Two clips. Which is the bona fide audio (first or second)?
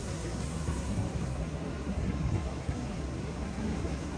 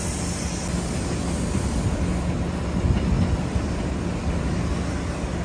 second